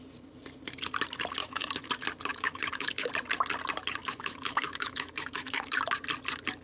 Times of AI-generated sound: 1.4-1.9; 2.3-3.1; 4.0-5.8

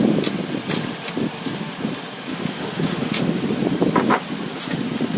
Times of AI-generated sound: 2.3-3.3

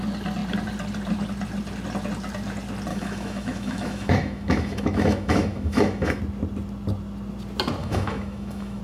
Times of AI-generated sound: 2.9-6.2; 7.8-8.8

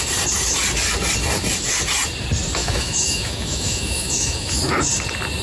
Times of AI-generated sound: 2.6-4.6

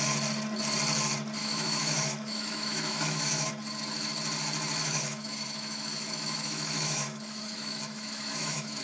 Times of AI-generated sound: 1.4-3.5; 4.8-8.8